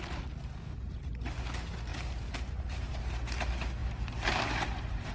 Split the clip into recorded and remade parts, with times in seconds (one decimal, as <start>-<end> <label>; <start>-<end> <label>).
0.0-1.9 recorded; 1.9-3.0 remade; 3.0-3.8 recorded; 3.8-5.1 remade